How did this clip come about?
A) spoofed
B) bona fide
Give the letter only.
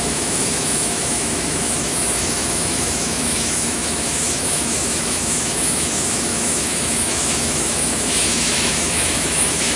A